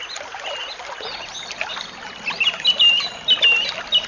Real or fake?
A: real